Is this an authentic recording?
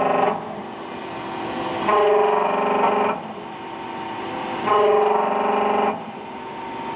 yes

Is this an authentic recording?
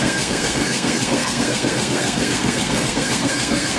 no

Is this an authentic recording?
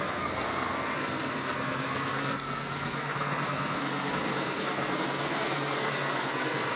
no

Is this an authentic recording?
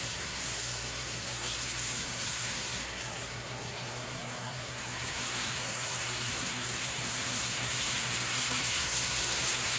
no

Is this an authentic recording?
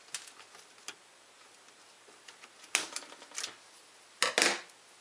yes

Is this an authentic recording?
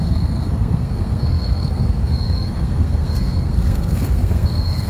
no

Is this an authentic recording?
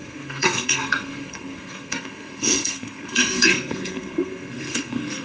no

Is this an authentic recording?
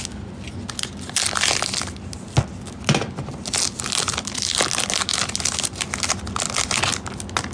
yes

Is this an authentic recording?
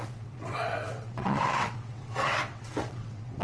no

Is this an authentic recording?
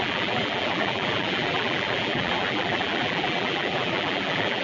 no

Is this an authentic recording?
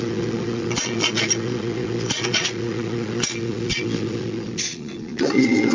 no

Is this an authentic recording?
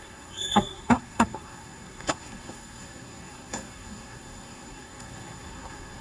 no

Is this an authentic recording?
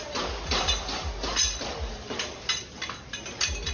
yes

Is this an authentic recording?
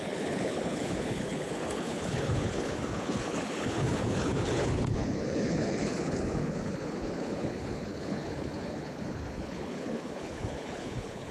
no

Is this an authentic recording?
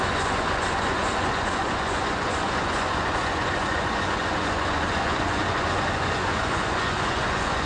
no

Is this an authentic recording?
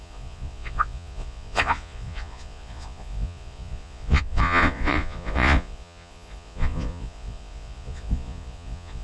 no